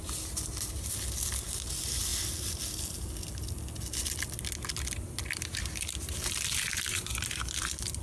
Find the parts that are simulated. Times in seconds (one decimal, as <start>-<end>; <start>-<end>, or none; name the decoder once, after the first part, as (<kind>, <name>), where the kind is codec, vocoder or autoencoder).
none